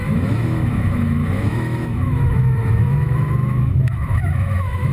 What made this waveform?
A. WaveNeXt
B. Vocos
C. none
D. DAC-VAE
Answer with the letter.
D